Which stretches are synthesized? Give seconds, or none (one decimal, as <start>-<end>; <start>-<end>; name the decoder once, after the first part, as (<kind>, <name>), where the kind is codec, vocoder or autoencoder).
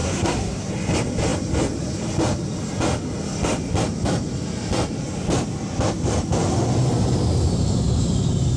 0.0-0.7 (codec, SNAC)